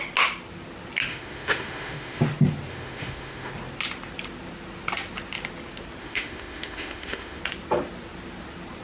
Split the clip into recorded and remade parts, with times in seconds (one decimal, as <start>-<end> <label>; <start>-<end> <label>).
0.0-1.1 recorded; 1.1-2.2 remade; 2.2-2.7 recorded; 2.7-3.5 remade; 3.5-6.0 recorded; 6.0-7.4 remade; 7.4-8.8 recorded